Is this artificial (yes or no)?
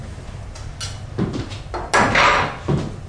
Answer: no